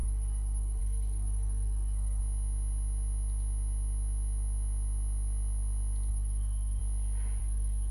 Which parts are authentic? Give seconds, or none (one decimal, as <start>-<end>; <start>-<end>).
2.2-6.1; 6.8-7.4

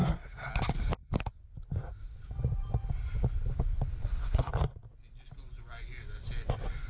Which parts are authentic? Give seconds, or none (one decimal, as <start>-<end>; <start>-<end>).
0.5-4.0; 4.5-6.9

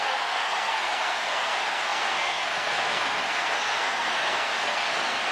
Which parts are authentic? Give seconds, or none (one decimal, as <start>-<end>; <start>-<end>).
none

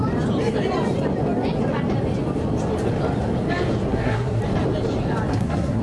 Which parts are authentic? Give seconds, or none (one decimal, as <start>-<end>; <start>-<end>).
0.0-3.9; 4.4-5.3

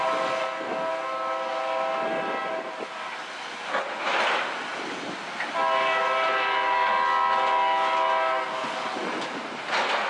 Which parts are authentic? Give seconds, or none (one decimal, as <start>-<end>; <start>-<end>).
0.0-10.1

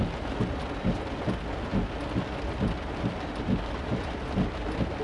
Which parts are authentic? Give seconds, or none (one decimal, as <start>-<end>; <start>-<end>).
0.0-5.0

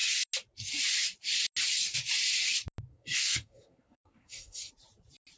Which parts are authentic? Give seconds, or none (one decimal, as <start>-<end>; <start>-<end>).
0.0-2.9; 4.7-5.4